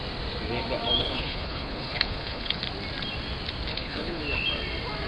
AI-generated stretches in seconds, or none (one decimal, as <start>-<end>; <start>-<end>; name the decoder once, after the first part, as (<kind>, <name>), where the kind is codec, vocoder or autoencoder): 1.0-2.6 (codec, HILCodec); 3.7-4.2